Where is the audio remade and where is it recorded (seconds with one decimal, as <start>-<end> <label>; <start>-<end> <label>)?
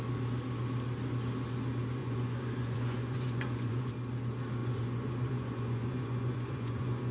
0.0-2.0 recorded; 2.0-3.9 remade; 3.9-4.6 recorded; 4.6-7.1 remade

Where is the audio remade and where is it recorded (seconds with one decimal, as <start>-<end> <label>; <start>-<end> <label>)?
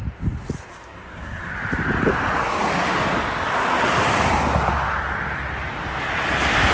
0.0-0.7 recorded; 0.7-1.5 remade; 1.5-6.7 recorded